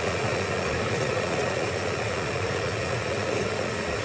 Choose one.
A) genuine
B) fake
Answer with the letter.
B